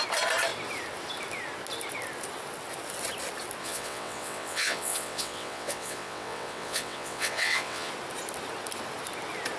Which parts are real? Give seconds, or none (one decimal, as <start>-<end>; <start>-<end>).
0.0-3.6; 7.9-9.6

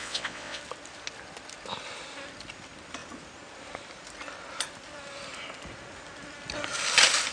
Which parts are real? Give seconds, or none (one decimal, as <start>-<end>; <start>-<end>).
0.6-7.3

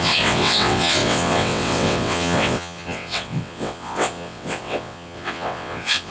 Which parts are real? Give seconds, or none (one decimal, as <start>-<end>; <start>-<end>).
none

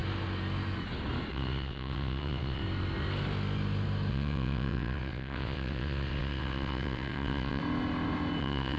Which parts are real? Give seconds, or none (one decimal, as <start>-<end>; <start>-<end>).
0.0-1.3; 2.6-4.1; 7.6-8.4